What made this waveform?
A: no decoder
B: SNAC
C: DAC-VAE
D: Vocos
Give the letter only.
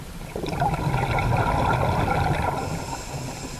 A